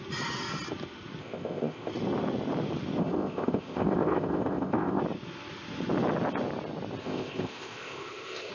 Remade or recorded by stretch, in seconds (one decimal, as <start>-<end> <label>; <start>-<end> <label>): 0.0-1.2 recorded; 1.2-1.9 remade; 1.9-3.0 recorded; 3.0-5.0 remade; 5.0-7.0 recorded; 7.0-8.5 remade

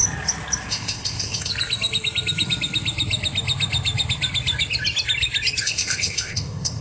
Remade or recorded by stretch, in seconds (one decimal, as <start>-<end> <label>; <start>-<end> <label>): 0.0-0.7 recorded; 0.7-1.5 remade; 1.5-5.6 recorded; 5.6-6.8 remade

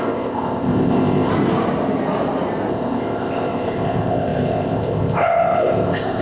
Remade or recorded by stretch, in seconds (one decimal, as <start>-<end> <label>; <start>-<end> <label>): 0.0-1.3 remade; 1.3-2.7 recorded; 2.7-6.2 remade

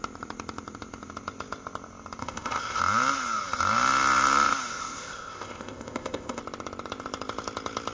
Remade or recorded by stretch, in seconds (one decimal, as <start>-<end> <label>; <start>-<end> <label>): 0.0-2.2 recorded; 2.2-2.8 remade; 2.8-4.7 recorded; 4.7-6.4 remade; 6.4-7.9 recorded

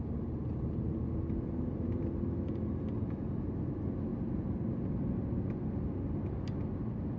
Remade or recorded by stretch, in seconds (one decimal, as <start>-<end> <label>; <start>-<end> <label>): 0.0-7.2 recorded

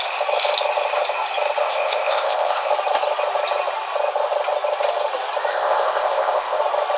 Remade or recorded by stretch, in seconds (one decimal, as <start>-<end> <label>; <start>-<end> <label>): 0.0-1.6 recorded; 1.6-2.7 remade; 2.7-5.5 recorded; 5.5-6.6 remade; 6.6-7.0 recorded

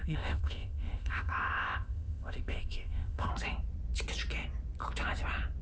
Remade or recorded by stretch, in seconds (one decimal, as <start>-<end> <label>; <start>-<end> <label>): 0.0-3.3 remade; 3.3-5.6 recorded

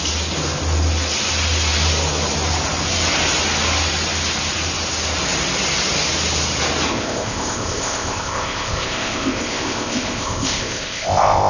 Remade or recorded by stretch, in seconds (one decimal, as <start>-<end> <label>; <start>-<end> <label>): 0.0-6.9 recorded; 6.9-11.5 remade